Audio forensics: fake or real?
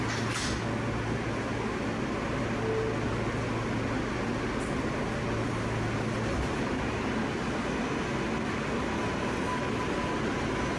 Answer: real